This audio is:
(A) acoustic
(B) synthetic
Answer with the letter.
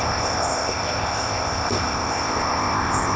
B